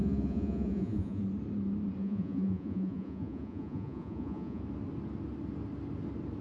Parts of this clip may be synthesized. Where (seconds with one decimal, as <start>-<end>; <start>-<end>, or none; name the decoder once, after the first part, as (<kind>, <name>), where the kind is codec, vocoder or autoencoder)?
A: 0.0-1.2 (vocoder, Vocos); 2.0-4.6